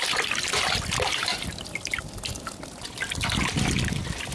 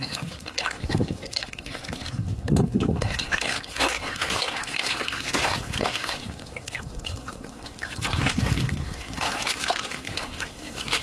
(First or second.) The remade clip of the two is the second